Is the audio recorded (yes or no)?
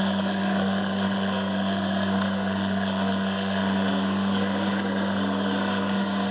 no